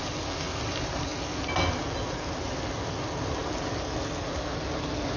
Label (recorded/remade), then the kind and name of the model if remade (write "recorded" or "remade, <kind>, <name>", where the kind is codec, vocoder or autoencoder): recorded